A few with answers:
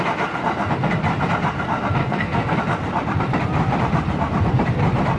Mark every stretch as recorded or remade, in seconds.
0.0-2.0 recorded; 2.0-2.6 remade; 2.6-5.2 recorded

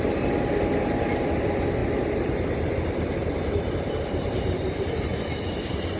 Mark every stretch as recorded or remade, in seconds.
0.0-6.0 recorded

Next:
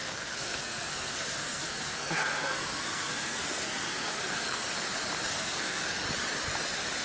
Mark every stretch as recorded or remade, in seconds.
0.0-4.6 remade; 4.6-5.3 recorded; 5.3-5.8 remade; 5.8-7.0 recorded

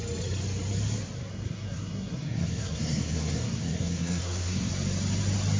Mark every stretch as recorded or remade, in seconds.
0.0-1.3 recorded; 1.3-4.7 remade; 4.7-5.6 recorded

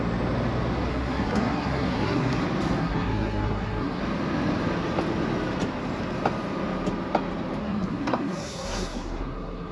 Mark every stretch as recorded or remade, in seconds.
0.0-0.9 recorded; 0.9-2.4 remade; 2.4-2.8 recorded; 2.8-4.0 remade; 4.0-7.6 recorded; 7.6-9.7 remade

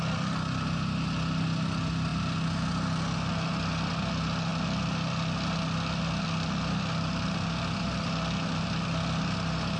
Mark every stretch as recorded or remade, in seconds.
0.0-9.8 recorded